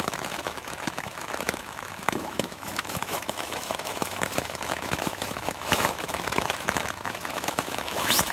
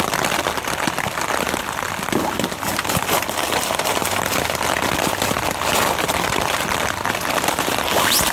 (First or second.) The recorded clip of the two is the second